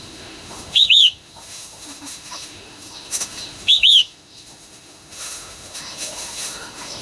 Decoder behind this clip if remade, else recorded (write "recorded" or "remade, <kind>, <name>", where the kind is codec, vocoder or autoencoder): remade, autoencoder, DAC-VAE